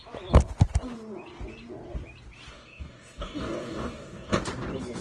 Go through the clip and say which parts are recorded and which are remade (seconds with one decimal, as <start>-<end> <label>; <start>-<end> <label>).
0.0-2.5 recorded; 2.5-4.4 remade; 4.4-5.0 recorded